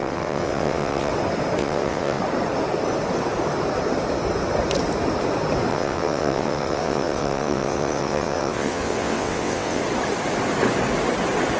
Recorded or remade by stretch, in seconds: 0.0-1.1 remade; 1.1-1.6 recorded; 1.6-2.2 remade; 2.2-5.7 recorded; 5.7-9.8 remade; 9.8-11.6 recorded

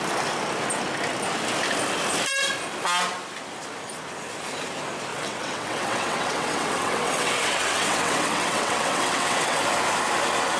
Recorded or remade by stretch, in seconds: 0.0-5.1 recorded; 5.1-9.6 remade; 9.6-10.6 recorded

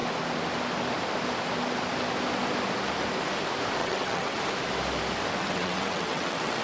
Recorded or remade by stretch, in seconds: 0.0-3.8 recorded; 3.8-4.4 remade; 4.4-5.4 recorded; 5.4-6.6 remade